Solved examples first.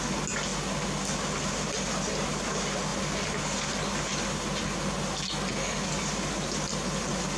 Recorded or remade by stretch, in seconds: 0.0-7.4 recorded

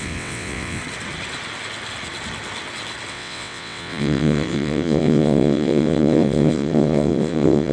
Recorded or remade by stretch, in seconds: 0.0-0.8 remade; 0.8-3.1 recorded; 3.1-7.7 remade

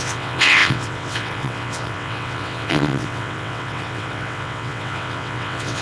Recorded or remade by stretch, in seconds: 0.0-5.8 remade

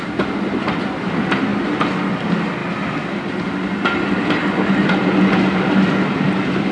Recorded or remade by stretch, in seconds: 0.0-6.7 recorded

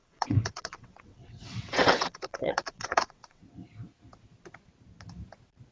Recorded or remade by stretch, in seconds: 0.0-3.4 remade; 3.4-5.7 recorded

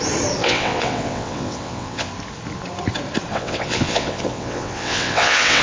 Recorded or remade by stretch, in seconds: 0.0-0.4 recorded; 0.4-2.1 remade; 2.1-3.3 recorded; 3.3-5.6 remade